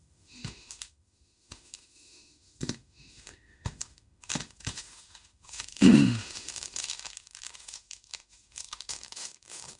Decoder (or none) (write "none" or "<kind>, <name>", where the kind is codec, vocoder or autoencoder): autoencoder, DAC-VAE